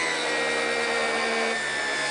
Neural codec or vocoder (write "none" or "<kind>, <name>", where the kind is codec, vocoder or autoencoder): none